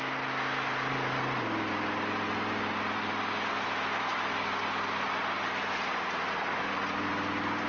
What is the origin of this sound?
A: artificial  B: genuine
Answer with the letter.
B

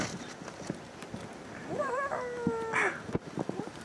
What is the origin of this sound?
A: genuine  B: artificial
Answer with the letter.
A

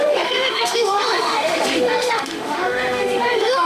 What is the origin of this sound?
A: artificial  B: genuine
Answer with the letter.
A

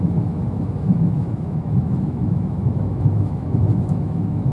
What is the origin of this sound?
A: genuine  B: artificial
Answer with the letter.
B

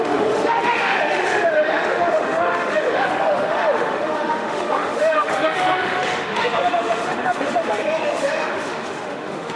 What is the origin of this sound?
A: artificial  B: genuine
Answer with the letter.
A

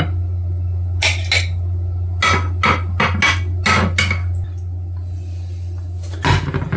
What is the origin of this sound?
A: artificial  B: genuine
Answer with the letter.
B